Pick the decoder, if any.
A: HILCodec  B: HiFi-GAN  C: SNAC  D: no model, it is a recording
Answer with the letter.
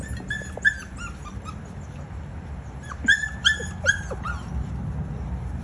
D